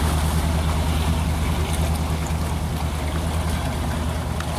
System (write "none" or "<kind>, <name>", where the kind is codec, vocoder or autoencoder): none